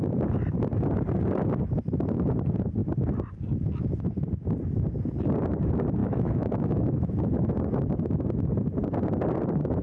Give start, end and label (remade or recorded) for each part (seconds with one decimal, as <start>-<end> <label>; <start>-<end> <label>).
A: 0.0-6.0 recorded; 6.0-7.1 remade; 7.1-9.8 recorded